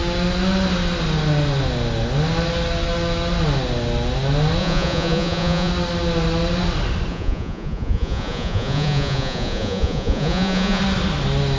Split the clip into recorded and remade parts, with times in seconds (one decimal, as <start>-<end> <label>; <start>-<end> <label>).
0.0-4.6 recorded; 4.6-5.7 remade; 5.7-7.1 recorded; 7.1-10.8 remade; 10.8-11.6 recorded